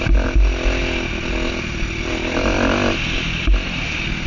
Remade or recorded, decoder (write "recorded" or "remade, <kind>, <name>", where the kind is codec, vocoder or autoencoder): recorded